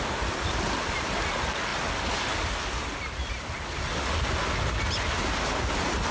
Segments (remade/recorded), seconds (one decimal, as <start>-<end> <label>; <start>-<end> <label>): 0.0-6.1 recorded